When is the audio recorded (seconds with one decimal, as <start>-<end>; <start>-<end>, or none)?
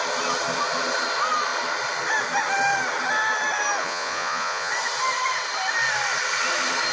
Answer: 0.0-3.8; 4.7-6.9